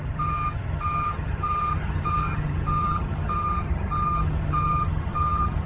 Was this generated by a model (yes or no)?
yes